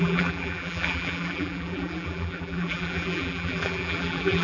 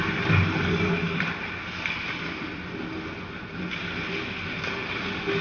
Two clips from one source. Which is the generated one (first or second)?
first